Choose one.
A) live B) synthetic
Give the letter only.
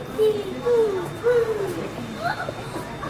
A